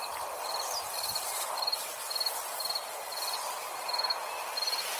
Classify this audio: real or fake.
real